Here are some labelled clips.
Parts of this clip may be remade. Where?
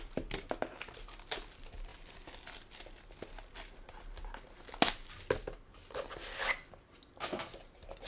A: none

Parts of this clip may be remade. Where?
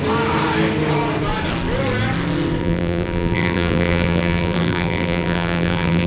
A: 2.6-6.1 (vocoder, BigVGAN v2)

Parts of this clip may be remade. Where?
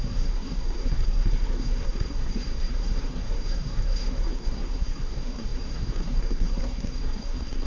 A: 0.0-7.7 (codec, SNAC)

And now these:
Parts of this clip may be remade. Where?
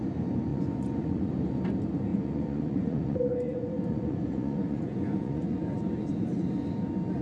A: 0.5-1.3 (vocoder, Vocos); 2.1-5.8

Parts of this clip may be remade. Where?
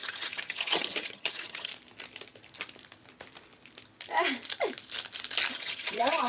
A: 0.0-1.7 (vocoder, HiFi-GAN); 5.5-6.3